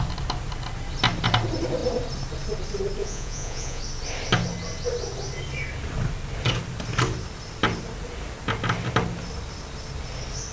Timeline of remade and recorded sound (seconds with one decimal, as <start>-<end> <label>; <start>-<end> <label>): 0.0-3.0 recorded; 3.0-3.8 remade; 3.8-10.5 recorded